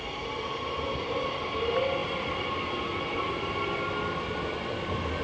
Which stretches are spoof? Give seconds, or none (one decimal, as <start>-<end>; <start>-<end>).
none